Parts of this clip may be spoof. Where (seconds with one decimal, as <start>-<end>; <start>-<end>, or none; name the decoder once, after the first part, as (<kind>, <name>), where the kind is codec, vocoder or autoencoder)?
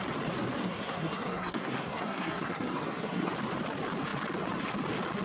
0.6-3.3 (codec, SNAC)